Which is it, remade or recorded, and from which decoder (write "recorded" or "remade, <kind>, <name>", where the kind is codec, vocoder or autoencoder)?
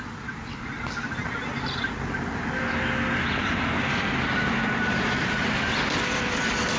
recorded